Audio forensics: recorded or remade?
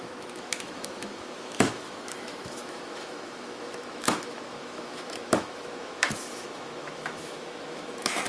remade